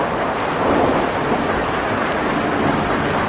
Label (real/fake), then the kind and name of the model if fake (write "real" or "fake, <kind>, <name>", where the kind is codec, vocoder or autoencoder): real